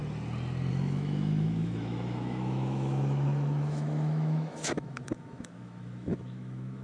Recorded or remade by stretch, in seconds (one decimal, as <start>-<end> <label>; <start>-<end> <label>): 0.0-0.7 recorded; 0.7-6.8 remade